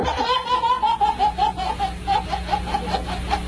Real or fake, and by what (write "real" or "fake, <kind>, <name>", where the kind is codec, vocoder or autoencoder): real